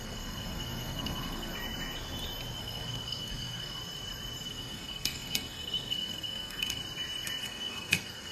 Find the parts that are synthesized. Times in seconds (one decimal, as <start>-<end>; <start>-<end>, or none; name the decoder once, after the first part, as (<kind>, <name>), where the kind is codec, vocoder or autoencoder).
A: 0.0-1.5 (codec, SNAC); 2.6-3.8; 4.5-6.8; 7.4-8.3